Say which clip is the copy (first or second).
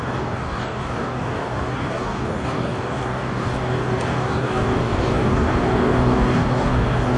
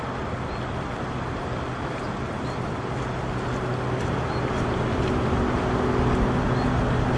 first